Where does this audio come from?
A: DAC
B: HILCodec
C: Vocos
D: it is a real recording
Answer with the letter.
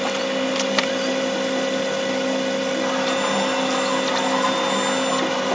D